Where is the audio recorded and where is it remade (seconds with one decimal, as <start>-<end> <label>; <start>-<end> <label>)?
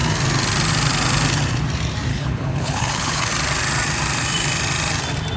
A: 0.0-2.1 recorded; 2.1-3.3 remade; 3.3-5.4 recorded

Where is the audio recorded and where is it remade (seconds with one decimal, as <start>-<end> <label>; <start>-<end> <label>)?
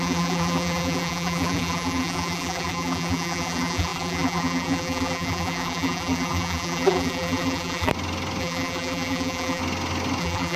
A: 0.0-7.9 remade; 7.9-8.4 recorded; 8.4-9.6 remade; 9.6-10.2 recorded; 10.2-10.6 remade